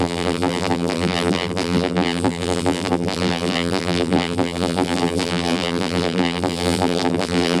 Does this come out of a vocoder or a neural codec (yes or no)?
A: yes